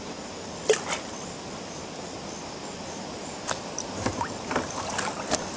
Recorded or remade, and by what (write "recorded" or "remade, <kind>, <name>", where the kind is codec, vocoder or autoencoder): recorded